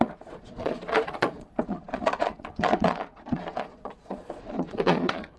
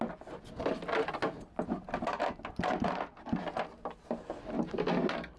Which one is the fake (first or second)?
first